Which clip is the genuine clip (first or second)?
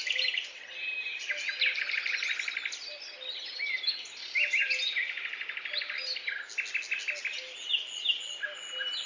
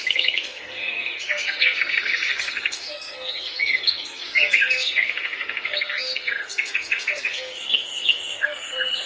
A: first